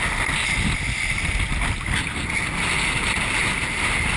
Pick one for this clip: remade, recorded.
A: recorded